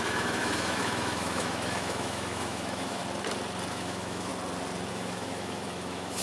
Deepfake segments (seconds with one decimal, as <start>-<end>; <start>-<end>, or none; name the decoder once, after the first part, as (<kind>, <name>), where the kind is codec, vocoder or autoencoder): 0.0-3.0 (autoencoder, DAC-VAE); 3.7-4.3; 4.9-6.2